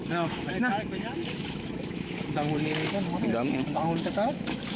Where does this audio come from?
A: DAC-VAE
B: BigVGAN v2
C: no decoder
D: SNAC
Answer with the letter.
A